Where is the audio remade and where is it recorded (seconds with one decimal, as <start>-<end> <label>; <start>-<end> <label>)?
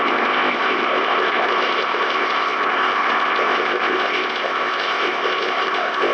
0.0-6.1 remade